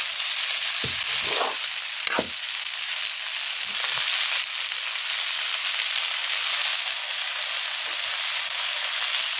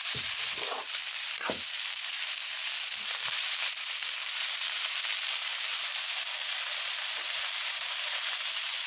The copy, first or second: second